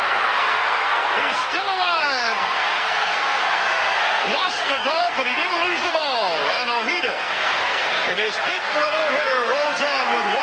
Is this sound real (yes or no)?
no